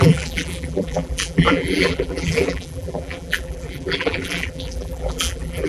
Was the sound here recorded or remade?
remade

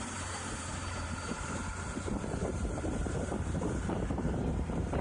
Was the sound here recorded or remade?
remade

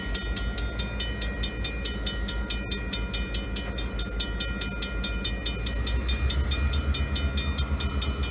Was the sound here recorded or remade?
recorded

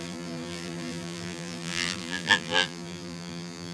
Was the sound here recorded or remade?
remade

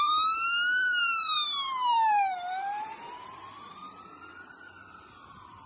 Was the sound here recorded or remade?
remade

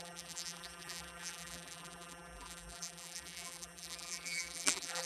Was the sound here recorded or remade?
remade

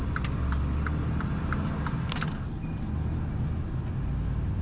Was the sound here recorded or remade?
recorded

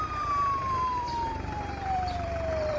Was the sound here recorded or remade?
remade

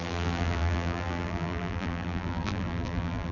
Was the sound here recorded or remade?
remade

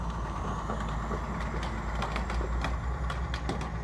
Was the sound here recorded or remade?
recorded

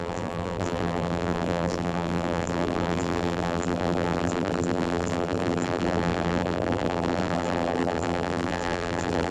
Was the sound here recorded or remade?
remade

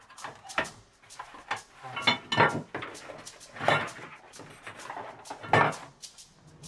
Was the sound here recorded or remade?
recorded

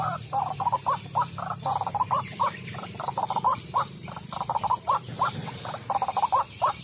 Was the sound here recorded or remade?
remade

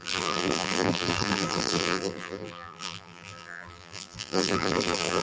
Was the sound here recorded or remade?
remade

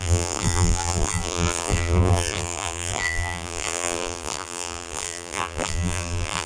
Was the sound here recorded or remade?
remade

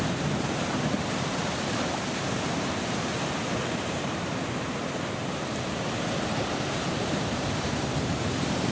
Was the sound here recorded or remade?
remade